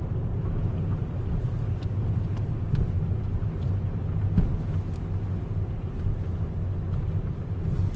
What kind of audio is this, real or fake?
real